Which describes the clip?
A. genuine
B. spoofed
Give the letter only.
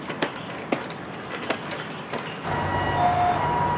A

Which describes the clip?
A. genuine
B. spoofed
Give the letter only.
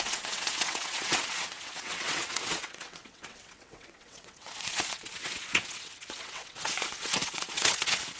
B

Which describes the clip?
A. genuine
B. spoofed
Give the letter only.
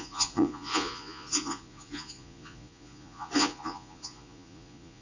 B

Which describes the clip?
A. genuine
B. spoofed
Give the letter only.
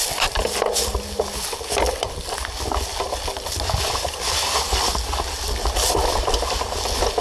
A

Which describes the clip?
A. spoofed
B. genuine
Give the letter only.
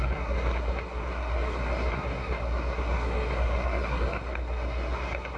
A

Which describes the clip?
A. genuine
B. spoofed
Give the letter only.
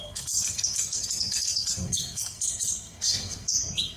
B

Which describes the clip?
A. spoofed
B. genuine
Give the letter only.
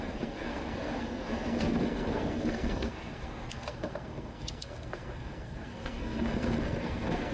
A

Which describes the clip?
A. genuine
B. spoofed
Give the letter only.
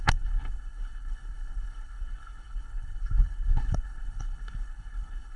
B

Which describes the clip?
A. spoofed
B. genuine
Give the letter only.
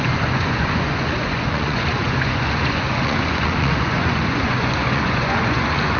A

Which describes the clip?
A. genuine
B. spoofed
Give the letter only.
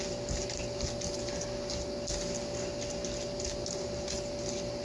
A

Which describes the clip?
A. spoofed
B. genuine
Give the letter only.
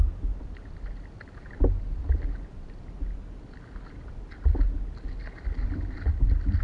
B